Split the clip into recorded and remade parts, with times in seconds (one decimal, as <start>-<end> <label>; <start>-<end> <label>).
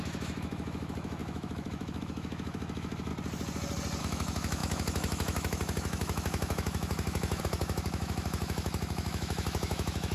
0.0-3.1 remade; 3.1-4.0 recorded; 4.0-10.1 remade